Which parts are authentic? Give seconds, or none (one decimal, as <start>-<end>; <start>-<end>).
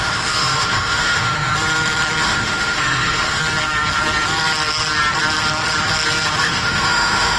1.5-2.2; 3.4-6.4